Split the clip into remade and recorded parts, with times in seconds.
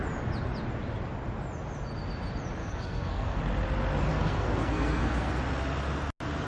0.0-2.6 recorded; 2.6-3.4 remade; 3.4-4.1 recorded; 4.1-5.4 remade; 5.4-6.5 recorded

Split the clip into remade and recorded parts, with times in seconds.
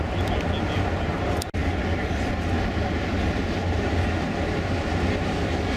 0.0-5.8 recorded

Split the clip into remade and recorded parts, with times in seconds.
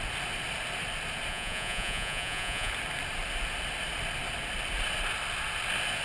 0.0-1.3 recorded; 1.3-2.7 remade; 2.7-6.0 recorded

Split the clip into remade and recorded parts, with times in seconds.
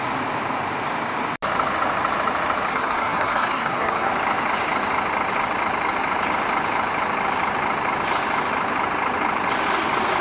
0.0-2.7 recorded; 2.7-4.1 remade; 4.1-10.2 recorded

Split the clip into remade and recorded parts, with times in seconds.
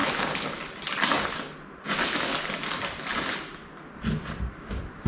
0.0-5.1 recorded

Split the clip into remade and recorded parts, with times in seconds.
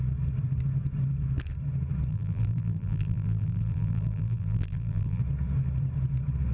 0.0-2.1 recorded; 2.1-5.2 remade; 5.2-6.5 recorded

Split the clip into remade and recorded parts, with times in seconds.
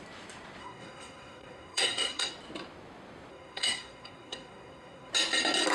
0.0-0.6 recorded; 0.6-2.3 remade; 2.3-3.3 recorded; 3.3-5.1 remade; 5.1-5.7 recorded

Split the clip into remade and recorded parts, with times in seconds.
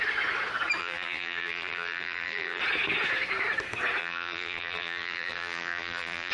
0.0-0.8 recorded; 0.8-2.6 remade; 2.6-4.0 recorded; 4.0-6.3 remade